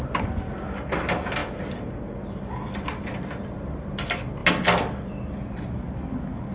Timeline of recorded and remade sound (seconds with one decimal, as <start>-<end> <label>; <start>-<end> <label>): 0.0-6.5 recorded